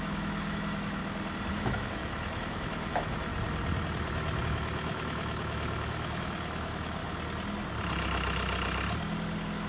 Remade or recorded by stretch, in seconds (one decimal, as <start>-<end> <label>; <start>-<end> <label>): 0.0-1.0 remade; 1.0-1.5 recorded; 1.5-3.3 remade; 3.3-4.4 recorded; 4.4-7.0 remade; 7.0-9.7 recorded